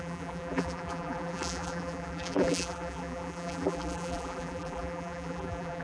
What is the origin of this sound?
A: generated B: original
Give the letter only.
A